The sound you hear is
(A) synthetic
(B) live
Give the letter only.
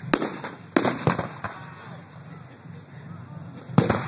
B